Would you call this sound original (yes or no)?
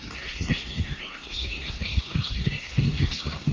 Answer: no